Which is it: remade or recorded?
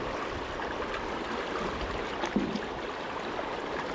recorded